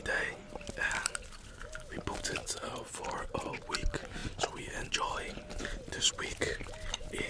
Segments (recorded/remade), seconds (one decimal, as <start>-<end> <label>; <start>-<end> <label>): 0.0-7.3 recorded